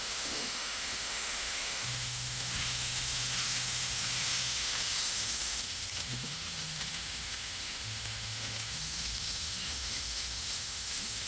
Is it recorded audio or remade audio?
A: remade